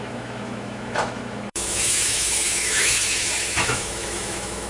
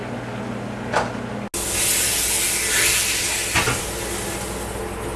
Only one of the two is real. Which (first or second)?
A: second